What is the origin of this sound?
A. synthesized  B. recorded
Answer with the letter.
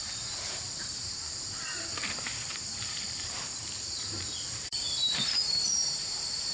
A